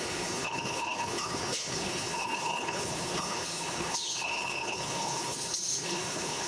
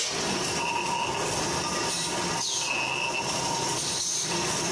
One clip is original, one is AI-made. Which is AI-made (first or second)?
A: first